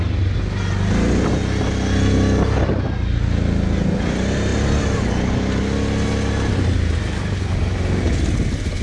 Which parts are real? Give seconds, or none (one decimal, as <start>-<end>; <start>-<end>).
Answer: 0.0-8.8